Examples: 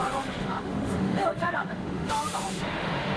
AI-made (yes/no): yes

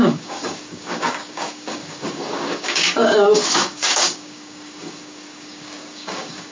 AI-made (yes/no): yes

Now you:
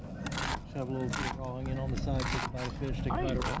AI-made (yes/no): no